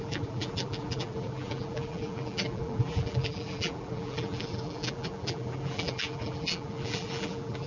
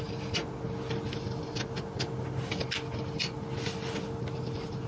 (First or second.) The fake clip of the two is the first